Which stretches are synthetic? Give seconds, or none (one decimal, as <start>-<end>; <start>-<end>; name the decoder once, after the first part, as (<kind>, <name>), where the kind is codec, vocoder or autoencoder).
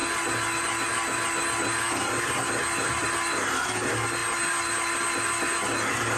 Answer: none